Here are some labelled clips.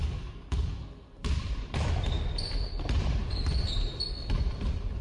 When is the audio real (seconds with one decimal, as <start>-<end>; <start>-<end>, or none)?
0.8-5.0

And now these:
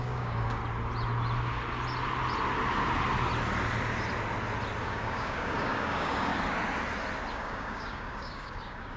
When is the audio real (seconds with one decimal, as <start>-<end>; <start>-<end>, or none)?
0.6-4.8; 6.3-7.3

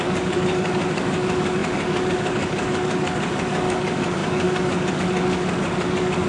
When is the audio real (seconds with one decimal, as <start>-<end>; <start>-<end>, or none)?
none

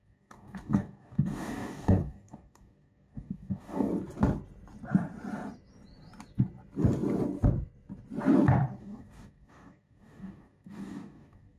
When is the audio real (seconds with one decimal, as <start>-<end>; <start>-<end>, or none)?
3.9-8.8